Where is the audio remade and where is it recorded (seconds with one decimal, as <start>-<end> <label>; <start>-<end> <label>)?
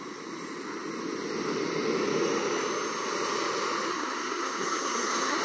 0.0-3.9 recorded; 3.9-5.4 remade